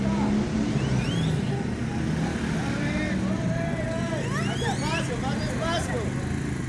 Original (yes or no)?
yes